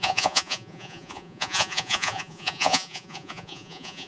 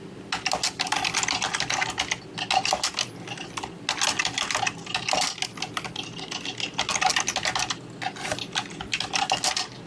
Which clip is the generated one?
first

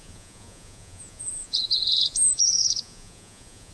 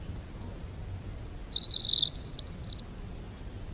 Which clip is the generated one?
first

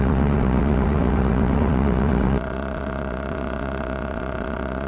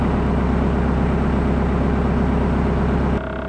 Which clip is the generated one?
first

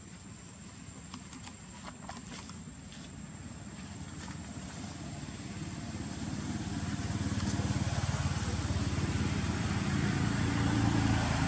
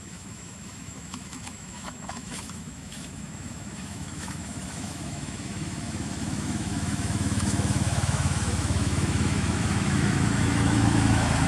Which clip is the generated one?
second